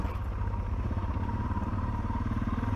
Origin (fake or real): fake